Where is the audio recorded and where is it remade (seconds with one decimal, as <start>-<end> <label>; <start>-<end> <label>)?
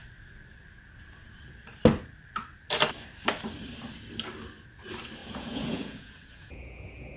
0.0-5.2 recorded; 5.2-7.2 remade